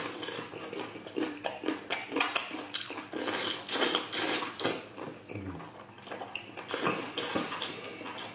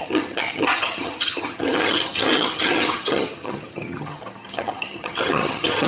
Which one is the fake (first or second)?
second